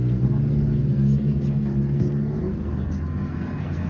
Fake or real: fake